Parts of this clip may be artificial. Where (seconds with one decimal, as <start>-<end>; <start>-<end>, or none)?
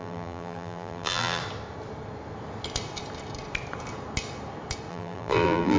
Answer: 0.0-1.4; 4.9-5.8